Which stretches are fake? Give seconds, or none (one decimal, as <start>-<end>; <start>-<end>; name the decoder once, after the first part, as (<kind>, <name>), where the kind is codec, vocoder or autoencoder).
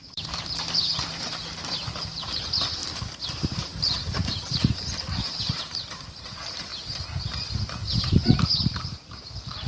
0.0-0.9 (vocoder, BigVGAN v2); 1.7-2.8; 3.3-6.7; 8.0-9.7